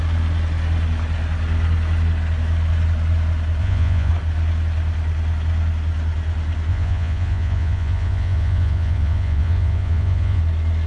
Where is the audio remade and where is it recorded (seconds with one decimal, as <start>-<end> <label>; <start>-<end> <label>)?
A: 0.0-3.6 recorded; 3.6-4.1 remade; 4.1-6.7 recorded; 6.7-10.4 remade; 10.4-10.9 recorded